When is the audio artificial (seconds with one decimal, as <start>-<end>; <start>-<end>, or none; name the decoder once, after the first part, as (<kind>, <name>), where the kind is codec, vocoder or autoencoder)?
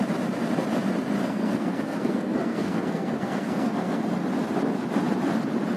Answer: 1.2-4.0 (codec, SNAC)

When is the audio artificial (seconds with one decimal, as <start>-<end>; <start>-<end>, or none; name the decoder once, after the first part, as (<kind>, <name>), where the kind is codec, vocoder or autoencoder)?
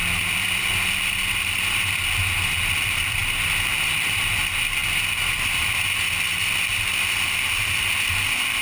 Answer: none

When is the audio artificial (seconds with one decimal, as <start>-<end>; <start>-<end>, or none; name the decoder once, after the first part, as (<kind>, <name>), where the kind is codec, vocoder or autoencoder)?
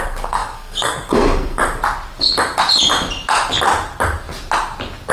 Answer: 0.0-1.6 (codec, SNAC)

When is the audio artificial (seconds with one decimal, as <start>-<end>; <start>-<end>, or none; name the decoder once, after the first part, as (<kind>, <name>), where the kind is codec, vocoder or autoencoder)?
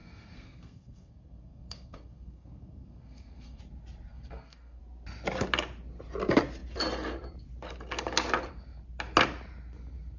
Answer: 0.0-3.6 (codec, SNAC); 4.1-4.8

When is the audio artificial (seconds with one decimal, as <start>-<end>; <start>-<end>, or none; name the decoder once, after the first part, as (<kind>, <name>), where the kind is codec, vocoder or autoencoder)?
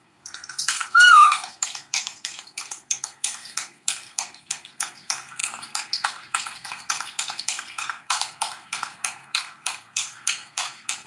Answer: 0.0-11.1 (codec, SNAC)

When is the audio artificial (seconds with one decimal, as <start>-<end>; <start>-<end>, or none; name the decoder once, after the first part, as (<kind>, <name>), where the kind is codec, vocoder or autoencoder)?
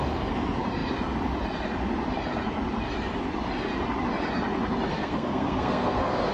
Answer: 4.9-6.3 (codec, SNAC)